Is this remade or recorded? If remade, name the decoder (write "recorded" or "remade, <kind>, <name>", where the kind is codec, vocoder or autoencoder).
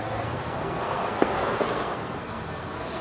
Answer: remade, codec, SNAC